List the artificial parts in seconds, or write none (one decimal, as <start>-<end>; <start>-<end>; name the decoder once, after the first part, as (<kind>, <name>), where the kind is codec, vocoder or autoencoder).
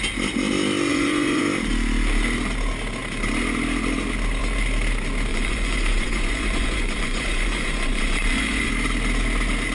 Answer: 0.9-1.4 (vocoder, Vocos); 5.3-8.7